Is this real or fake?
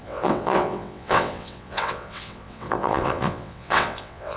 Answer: fake